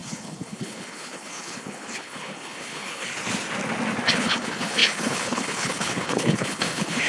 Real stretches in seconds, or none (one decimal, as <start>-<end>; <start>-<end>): 3.1-4.1